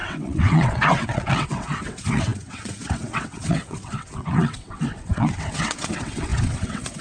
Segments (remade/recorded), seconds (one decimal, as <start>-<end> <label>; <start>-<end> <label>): 0.0-7.0 remade